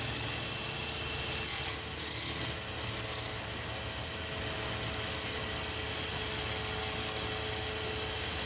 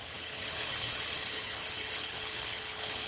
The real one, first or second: first